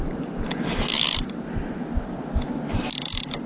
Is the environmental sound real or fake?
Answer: real